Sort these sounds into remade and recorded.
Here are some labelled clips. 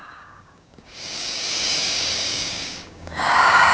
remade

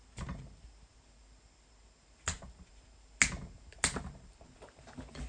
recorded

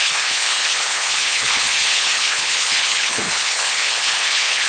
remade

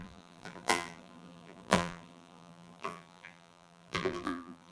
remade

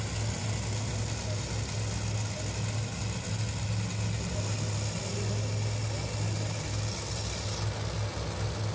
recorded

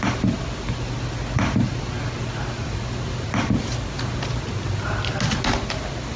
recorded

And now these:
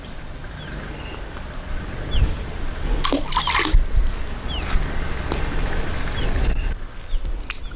recorded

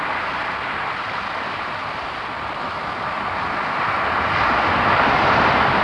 recorded